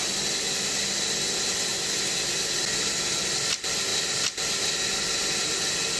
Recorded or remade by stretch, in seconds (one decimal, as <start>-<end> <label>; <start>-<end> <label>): 0.0-6.0 recorded